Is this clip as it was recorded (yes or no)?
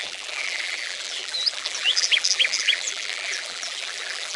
no